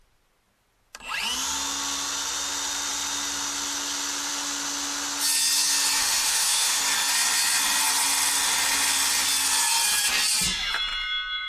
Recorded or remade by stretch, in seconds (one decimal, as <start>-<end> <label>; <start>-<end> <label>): 0.0-6.0 recorded; 6.0-6.8 remade; 6.8-11.5 recorded